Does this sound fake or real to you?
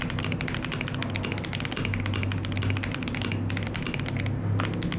real